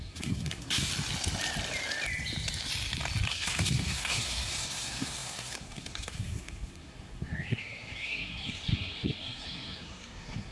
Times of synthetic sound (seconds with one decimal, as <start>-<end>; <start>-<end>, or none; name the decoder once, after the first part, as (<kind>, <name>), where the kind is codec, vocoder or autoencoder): 0.0-0.9 (codec, SNAC); 3.3-10.5